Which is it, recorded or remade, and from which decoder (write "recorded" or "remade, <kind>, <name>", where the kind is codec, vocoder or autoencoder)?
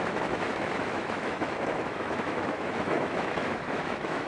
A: remade, autoencoder, DAC-VAE